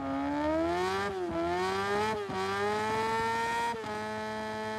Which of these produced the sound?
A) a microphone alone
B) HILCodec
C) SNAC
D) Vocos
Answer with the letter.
A